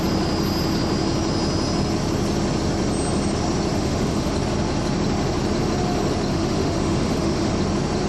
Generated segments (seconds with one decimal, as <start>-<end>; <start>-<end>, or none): 3.7-4.3; 6.3-7.5